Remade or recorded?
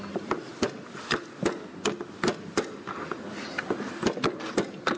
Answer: recorded